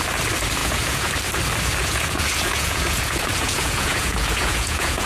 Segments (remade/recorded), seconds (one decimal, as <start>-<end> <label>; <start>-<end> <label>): 0.0-0.6 recorded; 0.6-1.1 remade; 1.1-1.8 recorded; 1.8-5.1 remade